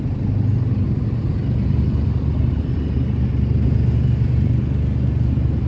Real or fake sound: real